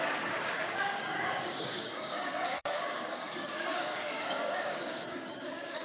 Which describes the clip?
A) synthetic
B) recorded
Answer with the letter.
A